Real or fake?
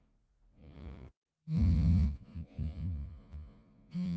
fake